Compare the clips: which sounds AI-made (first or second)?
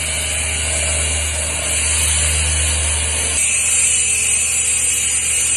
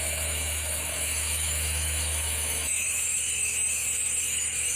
second